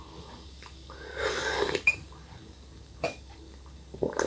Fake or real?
fake